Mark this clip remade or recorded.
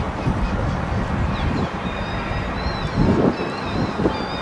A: recorded